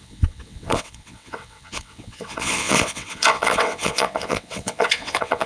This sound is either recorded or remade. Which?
remade